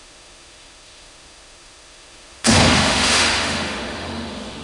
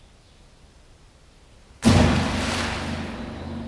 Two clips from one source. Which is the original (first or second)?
second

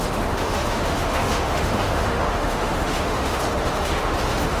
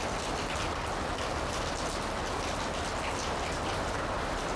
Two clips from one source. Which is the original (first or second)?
second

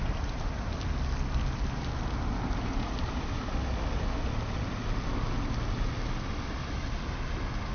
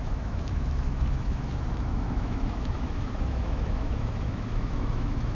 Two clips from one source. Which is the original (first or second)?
first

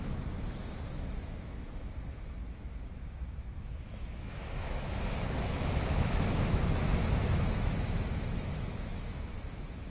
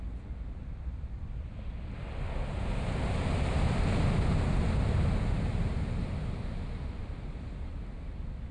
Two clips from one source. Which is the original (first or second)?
second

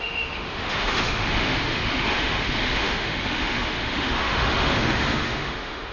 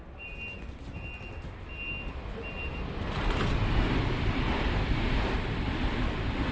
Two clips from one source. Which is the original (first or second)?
second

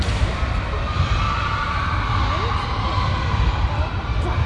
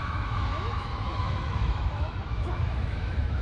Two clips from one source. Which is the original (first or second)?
first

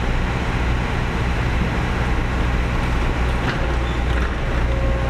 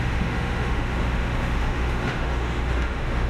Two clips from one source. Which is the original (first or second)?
first